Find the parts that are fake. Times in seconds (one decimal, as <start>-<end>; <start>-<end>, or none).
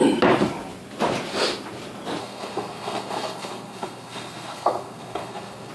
2.2-5.7